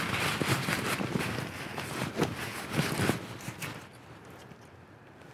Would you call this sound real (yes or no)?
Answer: yes